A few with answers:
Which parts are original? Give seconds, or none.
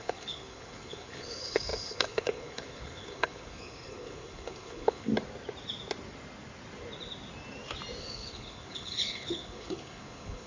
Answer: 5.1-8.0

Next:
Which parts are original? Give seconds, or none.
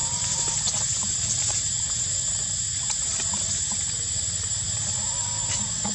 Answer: 0.0-5.9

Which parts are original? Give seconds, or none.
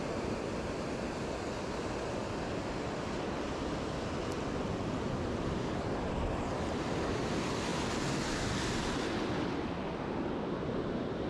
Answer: 0.0-11.3